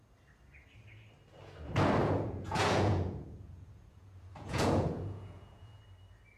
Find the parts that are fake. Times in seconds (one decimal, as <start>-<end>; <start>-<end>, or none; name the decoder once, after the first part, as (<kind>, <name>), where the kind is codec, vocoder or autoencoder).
2.0-5.8 (vocoder, Vocos)